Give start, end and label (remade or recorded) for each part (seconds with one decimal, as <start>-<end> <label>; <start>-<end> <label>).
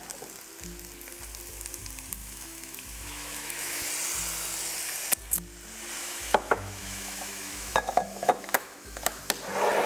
0.0-2.2 recorded; 2.2-3.9 remade; 3.9-6.0 recorded; 6.0-9.2 remade; 9.2-9.9 recorded